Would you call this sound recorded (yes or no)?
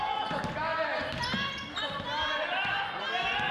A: yes